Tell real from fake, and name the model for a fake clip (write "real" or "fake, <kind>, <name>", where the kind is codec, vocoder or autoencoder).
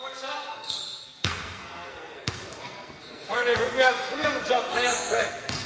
fake, codec, SNAC